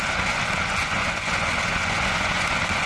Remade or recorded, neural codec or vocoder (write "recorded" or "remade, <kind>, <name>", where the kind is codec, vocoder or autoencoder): remade, vocoder, Vocos